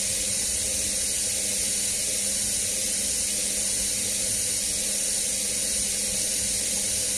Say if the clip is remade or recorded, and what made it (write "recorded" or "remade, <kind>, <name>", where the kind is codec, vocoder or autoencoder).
recorded